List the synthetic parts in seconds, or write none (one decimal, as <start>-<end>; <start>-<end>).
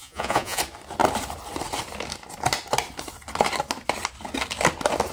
0.0-0.6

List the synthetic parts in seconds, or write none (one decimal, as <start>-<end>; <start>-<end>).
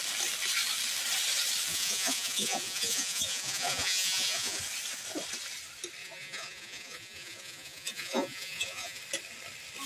1.7-4.6; 6.0-9.0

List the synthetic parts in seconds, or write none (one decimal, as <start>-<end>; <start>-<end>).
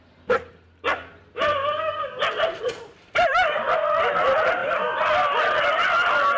none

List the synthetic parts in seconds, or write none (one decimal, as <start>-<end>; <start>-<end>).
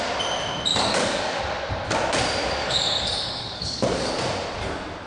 0.7-1.4; 2.6-4.1